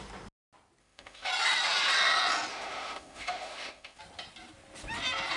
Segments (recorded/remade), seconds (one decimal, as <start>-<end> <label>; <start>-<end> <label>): 0.0-0.8 recorded; 0.8-1.3 remade; 1.3-2.5 recorded; 2.5-4.0 remade; 4.0-5.4 recorded